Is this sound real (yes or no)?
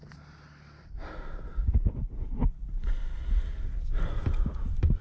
yes